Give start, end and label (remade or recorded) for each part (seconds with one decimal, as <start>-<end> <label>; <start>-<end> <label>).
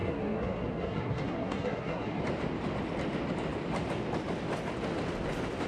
0.0-2.2 remade; 2.2-5.7 recorded